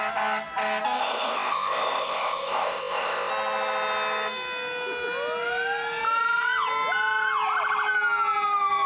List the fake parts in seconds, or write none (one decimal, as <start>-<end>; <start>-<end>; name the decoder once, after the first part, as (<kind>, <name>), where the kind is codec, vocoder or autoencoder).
1.0-3.3 (codec, ZipCodec)